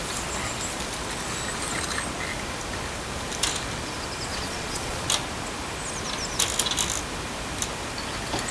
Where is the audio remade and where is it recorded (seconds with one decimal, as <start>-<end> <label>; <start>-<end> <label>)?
0.0-4.3 recorded; 4.3-5.1 remade; 5.1-8.5 recorded